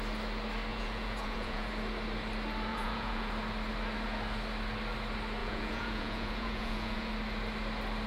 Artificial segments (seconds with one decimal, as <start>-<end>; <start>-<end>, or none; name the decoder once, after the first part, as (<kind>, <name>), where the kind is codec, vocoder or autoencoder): 0.7-1.7 (vocoder, Vocos); 2.7-3.3; 5.4-7.1